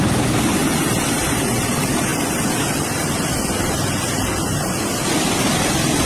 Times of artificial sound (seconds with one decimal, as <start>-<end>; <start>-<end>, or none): none